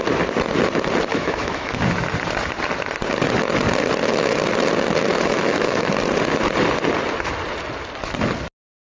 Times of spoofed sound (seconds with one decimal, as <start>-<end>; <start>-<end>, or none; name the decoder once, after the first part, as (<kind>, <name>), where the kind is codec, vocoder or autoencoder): 1.1-1.7 (autoencoder, DAC-VAE); 5.1-5.9